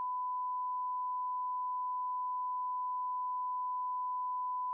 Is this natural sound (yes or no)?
yes